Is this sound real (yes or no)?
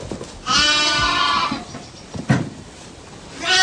yes